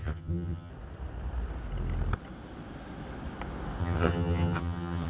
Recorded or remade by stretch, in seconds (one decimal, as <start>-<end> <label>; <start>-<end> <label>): 0.0-0.7 remade; 0.7-3.8 recorded; 3.8-5.1 remade